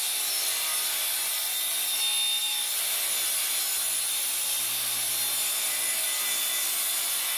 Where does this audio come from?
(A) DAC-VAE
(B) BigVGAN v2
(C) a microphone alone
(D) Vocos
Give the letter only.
C